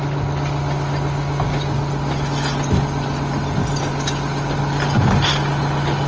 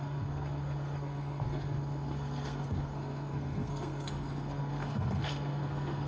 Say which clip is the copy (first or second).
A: second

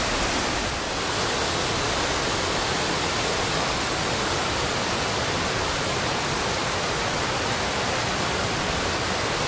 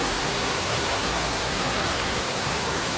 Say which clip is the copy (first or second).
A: second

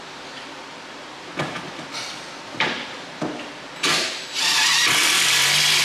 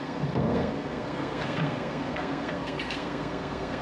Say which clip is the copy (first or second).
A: second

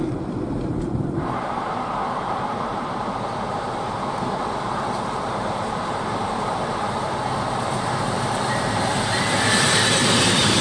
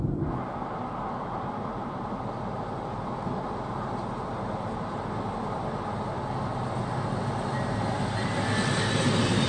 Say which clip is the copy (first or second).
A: first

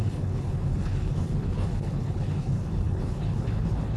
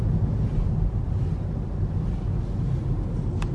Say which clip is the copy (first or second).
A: first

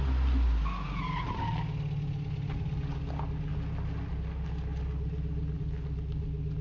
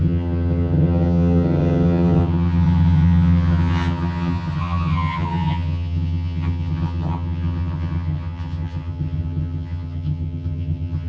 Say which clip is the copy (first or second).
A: second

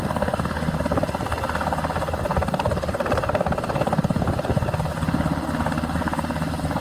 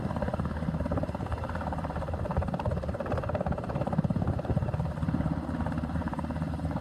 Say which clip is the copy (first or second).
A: second